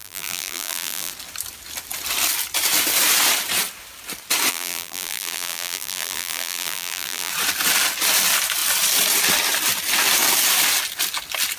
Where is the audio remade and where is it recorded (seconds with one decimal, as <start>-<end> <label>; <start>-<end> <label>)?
0.0-1.1 remade; 1.1-4.5 recorded; 4.5-7.3 remade; 7.3-11.6 recorded